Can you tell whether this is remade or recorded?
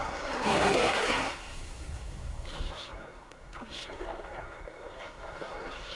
remade